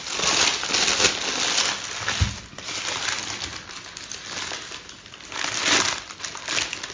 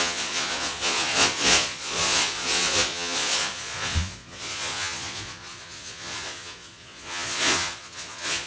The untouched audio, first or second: first